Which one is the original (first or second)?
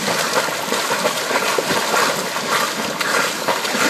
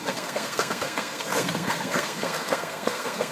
first